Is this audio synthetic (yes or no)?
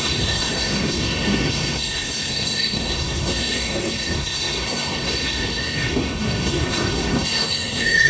yes